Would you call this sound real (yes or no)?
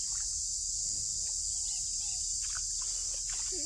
yes